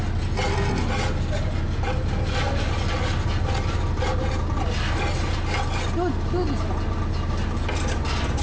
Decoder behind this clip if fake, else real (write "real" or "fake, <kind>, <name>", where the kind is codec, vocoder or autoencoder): real